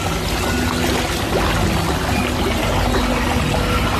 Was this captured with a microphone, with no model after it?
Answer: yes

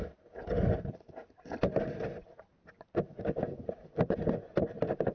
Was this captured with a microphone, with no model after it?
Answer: yes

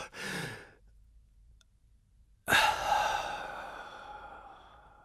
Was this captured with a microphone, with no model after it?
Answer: no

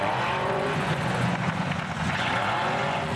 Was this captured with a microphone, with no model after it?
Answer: no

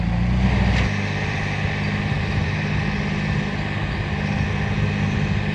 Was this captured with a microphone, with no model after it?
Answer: yes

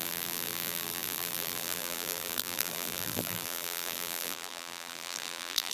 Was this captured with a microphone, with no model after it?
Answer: no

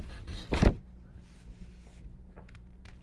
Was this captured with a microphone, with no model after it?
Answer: no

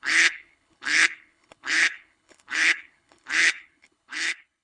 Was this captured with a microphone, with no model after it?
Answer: no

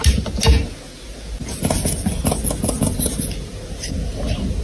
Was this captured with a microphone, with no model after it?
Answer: yes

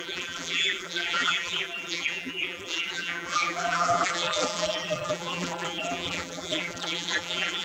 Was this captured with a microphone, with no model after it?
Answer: no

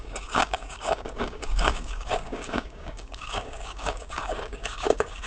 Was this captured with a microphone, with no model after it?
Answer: no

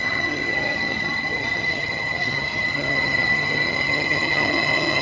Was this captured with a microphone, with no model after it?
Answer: no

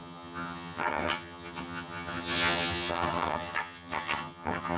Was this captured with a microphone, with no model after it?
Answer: no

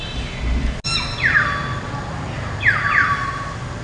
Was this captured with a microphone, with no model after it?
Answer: yes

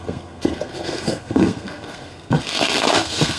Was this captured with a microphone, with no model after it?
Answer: no